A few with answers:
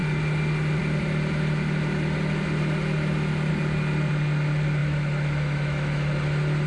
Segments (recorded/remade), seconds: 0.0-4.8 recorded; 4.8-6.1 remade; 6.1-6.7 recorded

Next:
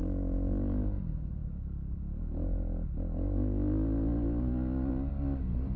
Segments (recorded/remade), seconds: 0.0-5.8 recorded

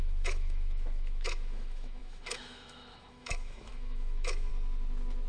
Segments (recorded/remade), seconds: 0.0-4.5 remade; 4.5-5.3 recorded